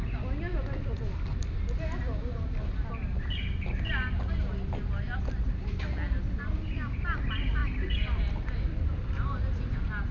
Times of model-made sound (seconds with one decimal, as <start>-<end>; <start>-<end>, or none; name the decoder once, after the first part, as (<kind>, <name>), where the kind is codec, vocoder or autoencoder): none